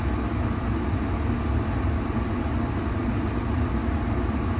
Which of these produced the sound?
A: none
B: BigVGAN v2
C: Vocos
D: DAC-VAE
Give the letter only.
A